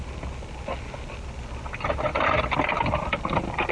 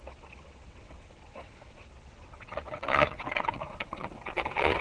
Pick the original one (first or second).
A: first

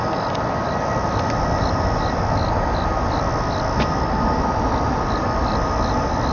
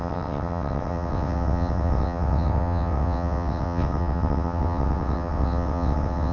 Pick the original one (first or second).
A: first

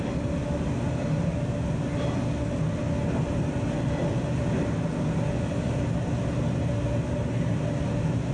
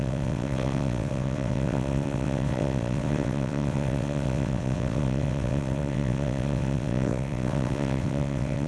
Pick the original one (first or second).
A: first